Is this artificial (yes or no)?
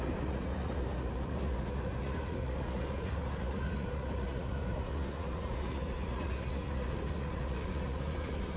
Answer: yes